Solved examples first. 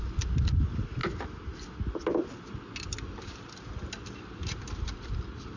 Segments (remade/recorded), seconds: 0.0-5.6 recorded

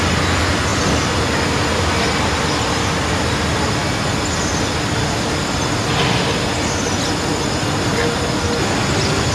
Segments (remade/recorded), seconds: 0.0-9.3 recorded

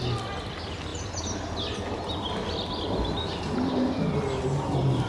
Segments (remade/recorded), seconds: 0.0-5.1 recorded

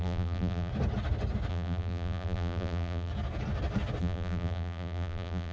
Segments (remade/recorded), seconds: 0.0-0.7 remade; 0.7-1.5 recorded; 1.5-3.1 remade; 3.1-4.0 recorded; 4.0-5.5 remade

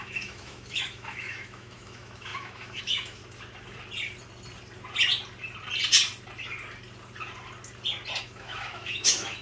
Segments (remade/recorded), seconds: 0.0-3.2 remade; 3.2-8.2 recorded; 8.2-9.4 remade

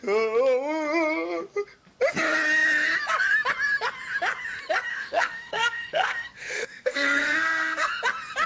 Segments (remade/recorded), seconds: 0.0-4.9 recorded; 4.9-7.9 remade; 7.9-8.5 recorded